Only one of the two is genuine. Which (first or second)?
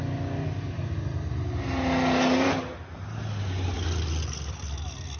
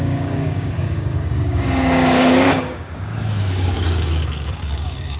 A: first